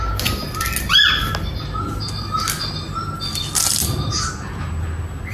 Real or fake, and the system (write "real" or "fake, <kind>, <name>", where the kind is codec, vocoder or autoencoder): real